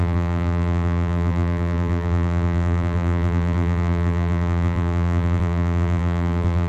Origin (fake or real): fake